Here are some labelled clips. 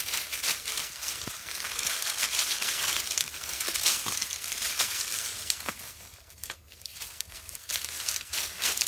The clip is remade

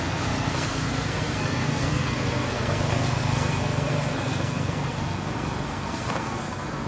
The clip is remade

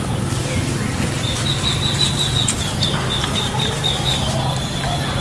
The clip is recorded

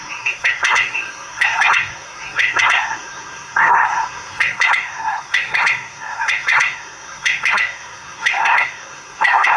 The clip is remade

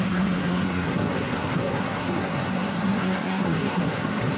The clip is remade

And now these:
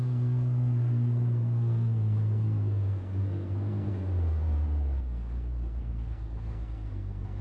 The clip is remade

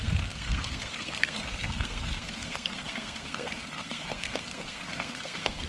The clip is remade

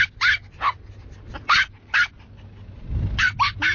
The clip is recorded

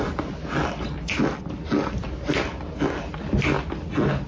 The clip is recorded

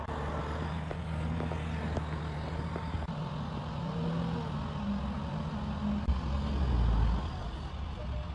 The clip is recorded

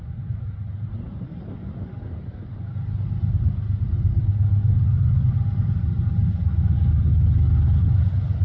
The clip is recorded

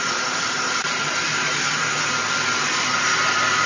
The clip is recorded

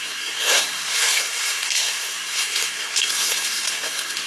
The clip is remade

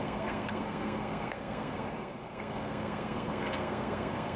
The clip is remade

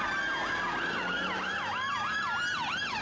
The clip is recorded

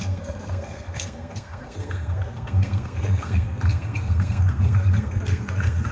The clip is remade